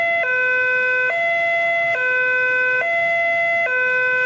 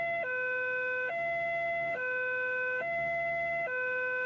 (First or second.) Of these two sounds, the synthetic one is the second